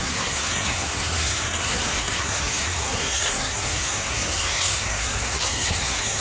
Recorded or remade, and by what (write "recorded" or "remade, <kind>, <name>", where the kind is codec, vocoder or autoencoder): remade, codec, SNAC